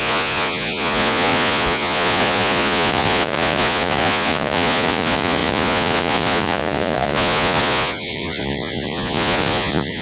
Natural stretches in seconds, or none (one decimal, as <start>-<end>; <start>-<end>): none